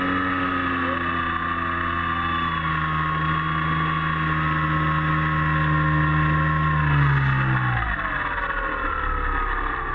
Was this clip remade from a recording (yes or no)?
no